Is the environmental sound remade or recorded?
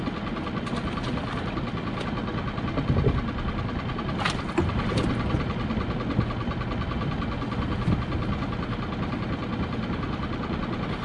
recorded